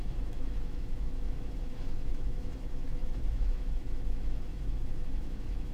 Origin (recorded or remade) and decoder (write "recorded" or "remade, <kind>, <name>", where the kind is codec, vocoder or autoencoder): remade, autoencoder, DAC-VAE